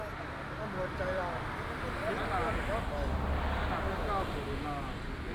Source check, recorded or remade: recorded